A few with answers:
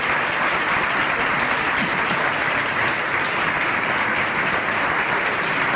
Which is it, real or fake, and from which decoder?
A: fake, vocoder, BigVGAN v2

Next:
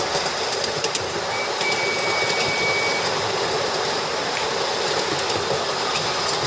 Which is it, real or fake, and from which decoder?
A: real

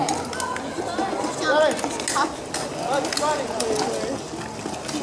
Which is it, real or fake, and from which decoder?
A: real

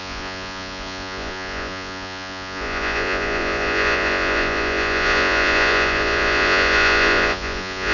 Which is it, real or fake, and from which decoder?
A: fake, vocoder, Vocos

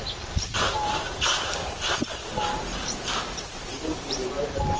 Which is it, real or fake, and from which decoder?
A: fake, vocoder, BigVGAN v2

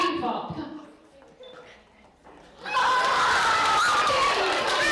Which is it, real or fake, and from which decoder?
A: fake, vocoder, BigVGAN v2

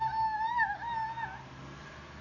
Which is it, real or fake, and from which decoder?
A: real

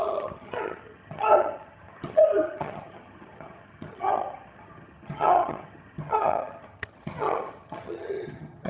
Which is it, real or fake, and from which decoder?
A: fake, vocoder, HiFi-GAN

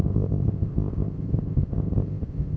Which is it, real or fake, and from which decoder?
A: fake, codec, ZipCodec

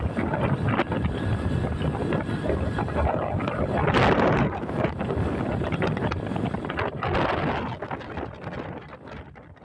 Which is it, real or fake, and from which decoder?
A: real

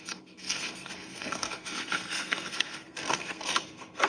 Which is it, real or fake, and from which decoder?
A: fake, codec, SNAC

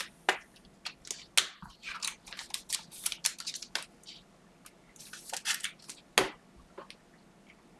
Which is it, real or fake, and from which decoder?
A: real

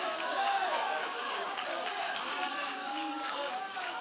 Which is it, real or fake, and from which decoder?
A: fake, codec, DAC